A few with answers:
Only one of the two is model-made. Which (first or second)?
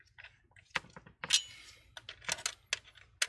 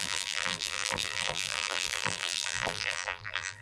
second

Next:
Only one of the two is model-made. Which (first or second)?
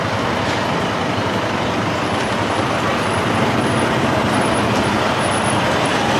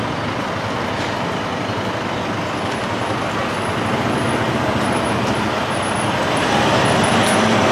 first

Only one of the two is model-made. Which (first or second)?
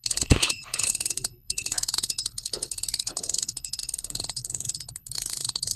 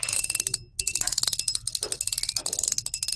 first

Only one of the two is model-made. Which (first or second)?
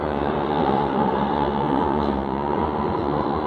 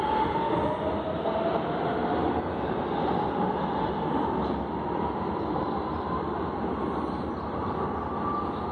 first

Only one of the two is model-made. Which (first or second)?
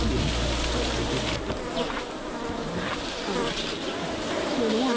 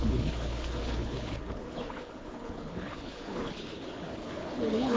second